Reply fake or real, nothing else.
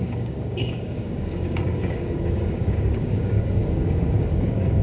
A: fake